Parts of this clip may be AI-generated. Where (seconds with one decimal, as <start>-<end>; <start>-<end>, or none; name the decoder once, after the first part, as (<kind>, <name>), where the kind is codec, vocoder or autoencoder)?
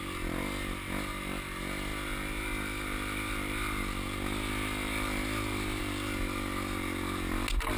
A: none